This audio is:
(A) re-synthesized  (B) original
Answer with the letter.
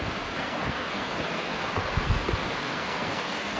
A